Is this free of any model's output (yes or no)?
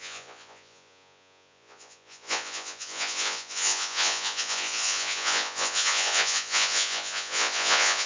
no